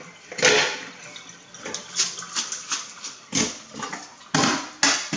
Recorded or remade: recorded